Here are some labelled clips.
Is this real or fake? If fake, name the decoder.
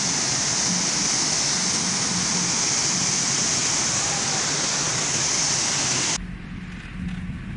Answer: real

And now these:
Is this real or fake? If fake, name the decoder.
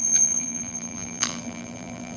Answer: fake, vocoder, BigVGAN v2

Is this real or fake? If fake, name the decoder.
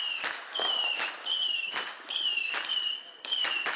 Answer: real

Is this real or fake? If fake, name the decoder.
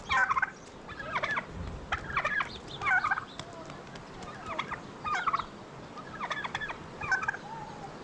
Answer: real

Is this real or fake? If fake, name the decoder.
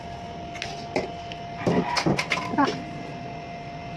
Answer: real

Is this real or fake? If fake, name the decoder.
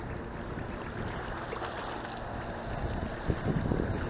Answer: real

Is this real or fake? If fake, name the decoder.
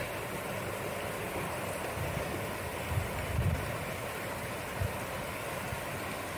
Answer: real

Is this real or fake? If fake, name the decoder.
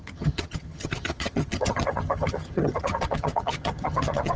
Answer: fake, vocoder, HiFi-GAN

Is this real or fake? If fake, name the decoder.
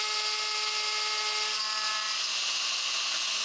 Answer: real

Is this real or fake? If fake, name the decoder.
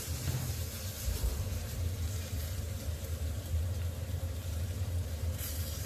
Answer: fake, vocoder, BigVGAN v2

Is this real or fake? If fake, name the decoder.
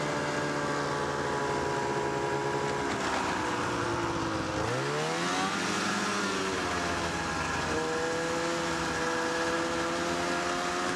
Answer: real